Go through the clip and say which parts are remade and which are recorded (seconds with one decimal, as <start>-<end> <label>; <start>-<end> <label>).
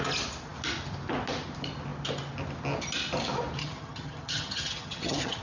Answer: 0.0-3.6 recorded; 3.6-5.4 remade